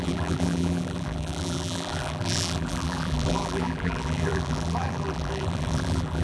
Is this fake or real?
fake